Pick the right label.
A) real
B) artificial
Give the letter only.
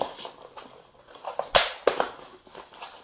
A